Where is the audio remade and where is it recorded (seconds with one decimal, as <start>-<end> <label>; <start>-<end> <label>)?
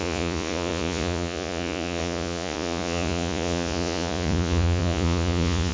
0.0-5.7 remade